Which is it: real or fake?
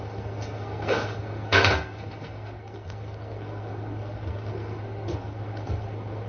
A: fake